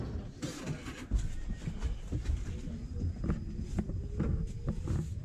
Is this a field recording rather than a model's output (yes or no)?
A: yes